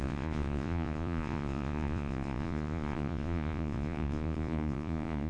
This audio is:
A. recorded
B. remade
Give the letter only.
B